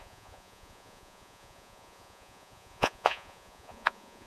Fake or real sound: fake